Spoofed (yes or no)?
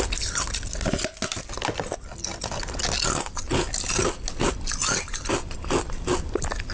no